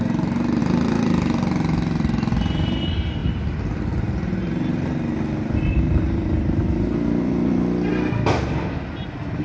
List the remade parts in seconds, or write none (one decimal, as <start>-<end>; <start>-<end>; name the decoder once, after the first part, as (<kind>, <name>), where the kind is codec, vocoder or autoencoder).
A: none